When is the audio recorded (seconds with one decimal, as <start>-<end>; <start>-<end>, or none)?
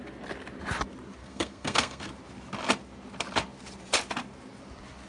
0.0-1.2; 2.0-5.1